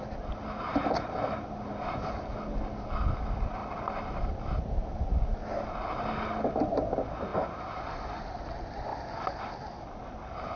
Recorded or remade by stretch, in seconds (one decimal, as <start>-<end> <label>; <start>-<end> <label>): 0.0-3.6 recorded; 3.6-4.6 remade; 4.6-8.9 recorded; 8.9-9.5 remade; 9.5-10.6 recorded